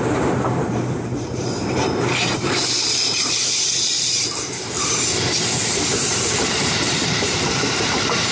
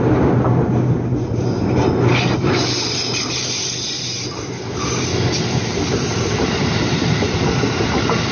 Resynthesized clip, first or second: first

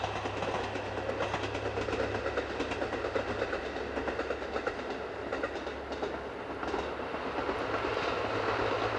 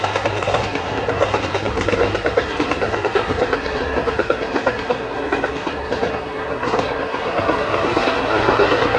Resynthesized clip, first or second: second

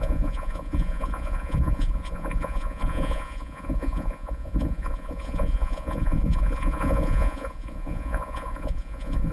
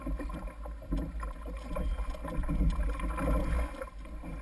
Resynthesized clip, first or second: first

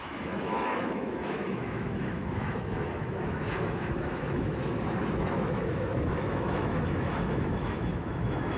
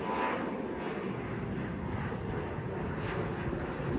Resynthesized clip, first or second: first